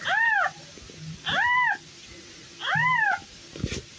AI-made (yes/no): no